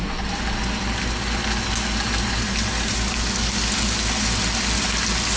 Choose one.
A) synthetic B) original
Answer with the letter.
B